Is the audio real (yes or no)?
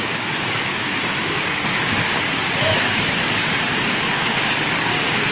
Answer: no